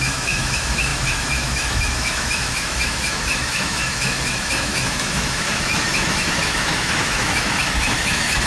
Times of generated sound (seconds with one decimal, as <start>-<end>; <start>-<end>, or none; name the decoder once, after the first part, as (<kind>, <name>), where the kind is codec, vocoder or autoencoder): 0.0-8.5 (autoencoder, DAC-VAE)